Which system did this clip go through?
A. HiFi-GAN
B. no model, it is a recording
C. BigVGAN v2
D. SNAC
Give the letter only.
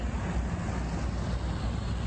B